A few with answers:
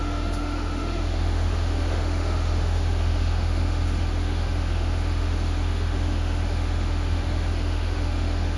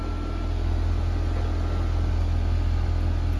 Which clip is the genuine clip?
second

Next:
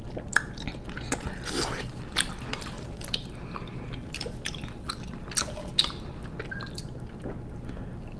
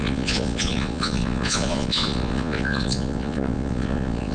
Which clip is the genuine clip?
first